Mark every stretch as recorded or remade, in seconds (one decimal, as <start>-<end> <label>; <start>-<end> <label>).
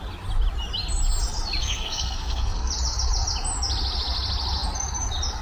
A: 0.0-1.6 recorded; 1.6-2.7 remade; 2.7-5.4 recorded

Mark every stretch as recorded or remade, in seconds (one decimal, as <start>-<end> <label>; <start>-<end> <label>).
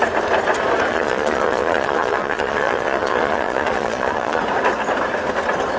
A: 0.0-0.9 recorded; 0.9-4.4 remade; 4.4-5.8 recorded